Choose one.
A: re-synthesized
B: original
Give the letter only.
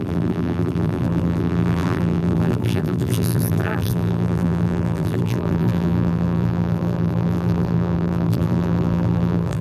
A